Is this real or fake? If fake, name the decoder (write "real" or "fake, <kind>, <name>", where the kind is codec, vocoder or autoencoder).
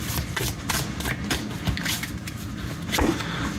real